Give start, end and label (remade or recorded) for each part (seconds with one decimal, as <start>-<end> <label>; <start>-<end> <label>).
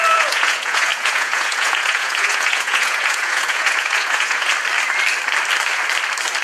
0.0-4.5 remade; 4.5-6.4 recorded